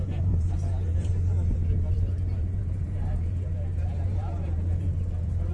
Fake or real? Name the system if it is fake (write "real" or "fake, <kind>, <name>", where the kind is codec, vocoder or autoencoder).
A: fake, vocoder, BigVGAN v2